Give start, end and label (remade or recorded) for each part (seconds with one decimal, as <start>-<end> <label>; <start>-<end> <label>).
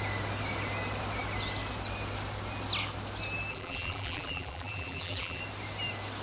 0.0-3.5 recorded; 3.5-5.4 remade; 5.4-6.2 recorded